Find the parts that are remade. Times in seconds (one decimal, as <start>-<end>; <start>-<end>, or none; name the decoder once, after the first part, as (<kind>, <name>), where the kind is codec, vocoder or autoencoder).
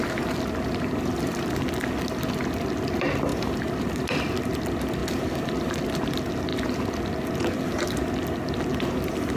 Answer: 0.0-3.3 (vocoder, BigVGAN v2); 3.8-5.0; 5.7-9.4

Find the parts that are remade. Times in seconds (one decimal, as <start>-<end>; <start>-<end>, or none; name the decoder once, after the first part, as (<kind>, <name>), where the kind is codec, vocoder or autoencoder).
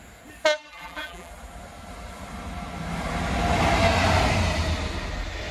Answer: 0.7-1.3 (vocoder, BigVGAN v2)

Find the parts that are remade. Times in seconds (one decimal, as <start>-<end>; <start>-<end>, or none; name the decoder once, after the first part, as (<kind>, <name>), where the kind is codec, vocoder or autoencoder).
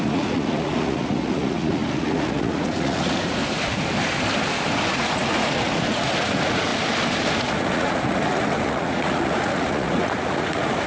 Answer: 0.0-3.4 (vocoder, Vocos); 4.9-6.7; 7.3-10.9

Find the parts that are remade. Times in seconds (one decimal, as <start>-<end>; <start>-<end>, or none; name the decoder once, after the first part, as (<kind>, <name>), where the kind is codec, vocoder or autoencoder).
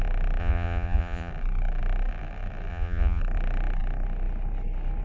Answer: 0.4-1.3 (vocoder, Vocos); 2.7-3.2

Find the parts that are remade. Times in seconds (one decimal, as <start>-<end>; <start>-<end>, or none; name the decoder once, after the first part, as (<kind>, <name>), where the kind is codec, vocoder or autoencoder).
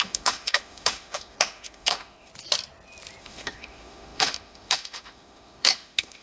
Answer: 0.0-2.3 (autoencoder, DAC-VAE); 3.2-6.2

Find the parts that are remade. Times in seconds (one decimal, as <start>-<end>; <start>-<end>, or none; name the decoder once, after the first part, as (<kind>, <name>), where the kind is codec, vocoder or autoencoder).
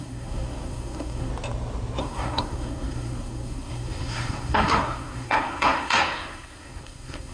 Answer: 0.0-1.3 (codec, SNAC); 2.0-7.3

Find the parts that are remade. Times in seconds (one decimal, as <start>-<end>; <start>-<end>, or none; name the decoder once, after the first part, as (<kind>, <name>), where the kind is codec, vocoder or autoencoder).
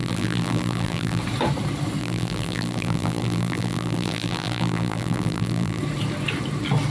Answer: 0.0-1.2 (vocoder, BigVGAN v2); 2.0-5.8